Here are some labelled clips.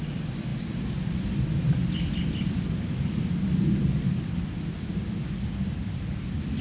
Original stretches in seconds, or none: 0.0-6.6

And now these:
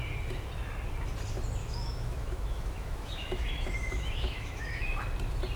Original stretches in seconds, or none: 0.0-1.6; 5.0-5.6

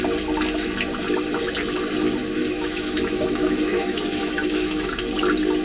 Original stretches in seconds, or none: 0.0-2.4; 4.9-5.6

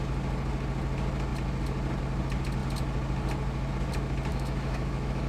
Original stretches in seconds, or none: 0.0-4.3